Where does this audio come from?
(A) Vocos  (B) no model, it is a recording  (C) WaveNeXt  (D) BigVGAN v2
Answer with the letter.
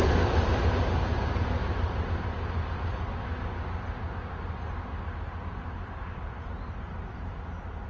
B